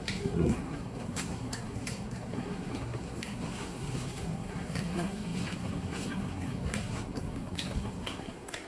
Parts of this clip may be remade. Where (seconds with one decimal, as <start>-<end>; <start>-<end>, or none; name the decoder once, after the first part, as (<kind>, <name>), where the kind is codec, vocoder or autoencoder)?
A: 0.0-8.7 (codec, SNAC)